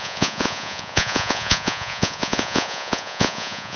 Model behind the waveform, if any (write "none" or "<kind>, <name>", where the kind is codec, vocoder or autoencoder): vocoder, Vocos